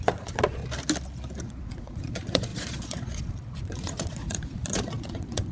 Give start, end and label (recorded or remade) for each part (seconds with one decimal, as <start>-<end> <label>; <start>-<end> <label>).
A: 0.0-0.6 remade; 0.6-1.4 recorded; 1.4-5.5 remade

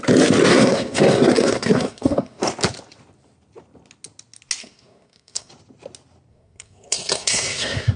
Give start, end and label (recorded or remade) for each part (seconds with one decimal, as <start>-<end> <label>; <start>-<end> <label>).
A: 0.0-0.5 recorded; 0.5-2.4 remade; 2.4-4.6 recorded; 4.6-5.5 remade; 5.5-6.3 recorded; 6.3-8.0 remade

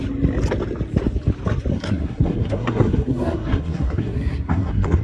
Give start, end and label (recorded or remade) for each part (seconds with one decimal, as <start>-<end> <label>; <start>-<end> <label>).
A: 0.0-1.7 recorded; 1.7-5.0 remade

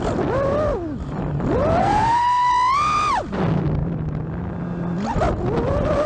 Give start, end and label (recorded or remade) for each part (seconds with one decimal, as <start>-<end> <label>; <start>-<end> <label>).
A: 0.0-1.8 recorded; 1.8-2.5 remade; 2.5-6.1 recorded

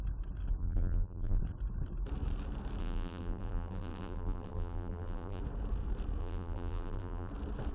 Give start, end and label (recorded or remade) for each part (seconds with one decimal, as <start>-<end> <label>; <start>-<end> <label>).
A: 0.0-0.6 recorded; 0.6-1.4 remade; 1.4-2.8 recorded; 2.8-5.4 remade; 5.4-6.2 recorded; 6.2-7.3 remade; 7.3-7.7 recorded

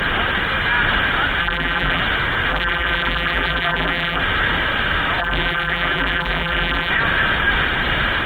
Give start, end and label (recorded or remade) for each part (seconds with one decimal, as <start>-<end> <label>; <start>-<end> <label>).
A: 0.0-1.4 recorded; 1.4-2.0 remade; 2.0-2.5 recorded; 2.5-4.2 remade; 4.2-5.2 recorded; 5.2-6.9 remade; 6.9-8.3 recorded